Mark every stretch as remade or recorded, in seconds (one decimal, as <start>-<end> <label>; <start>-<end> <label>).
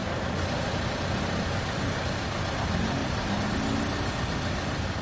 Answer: 0.0-3.0 recorded; 3.0-3.5 remade; 3.5-5.0 recorded